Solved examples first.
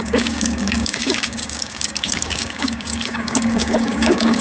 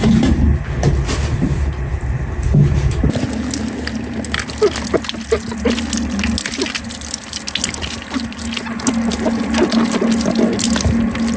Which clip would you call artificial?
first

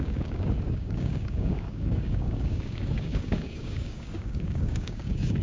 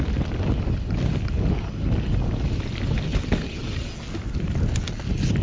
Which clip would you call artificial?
first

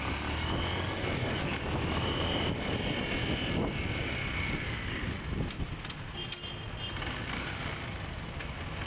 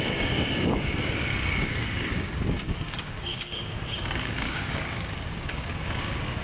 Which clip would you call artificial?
second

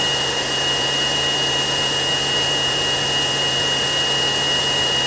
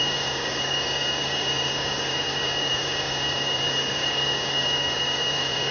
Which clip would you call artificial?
second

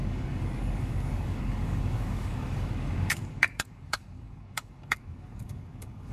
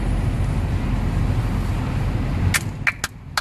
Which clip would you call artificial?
first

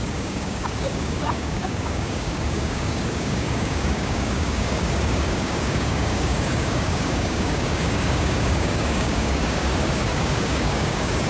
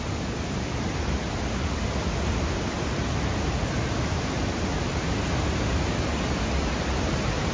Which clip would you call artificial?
first